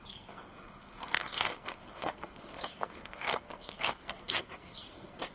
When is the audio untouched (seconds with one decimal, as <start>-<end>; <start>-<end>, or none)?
none